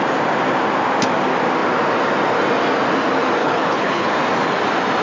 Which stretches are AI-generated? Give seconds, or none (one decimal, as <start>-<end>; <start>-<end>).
3.4-4.1